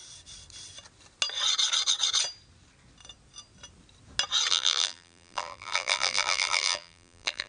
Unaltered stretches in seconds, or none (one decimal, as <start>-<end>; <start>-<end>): 0.0-4.5